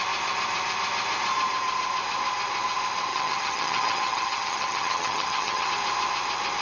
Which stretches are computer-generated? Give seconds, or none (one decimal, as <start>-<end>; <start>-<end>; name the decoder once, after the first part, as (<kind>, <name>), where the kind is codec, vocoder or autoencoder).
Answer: 3.1-5.7 (vocoder, HiFi-GAN)